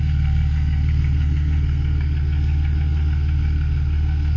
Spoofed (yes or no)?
yes